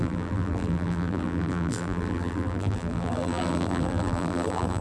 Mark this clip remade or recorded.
remade